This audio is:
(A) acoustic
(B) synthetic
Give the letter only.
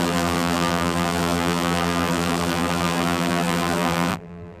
B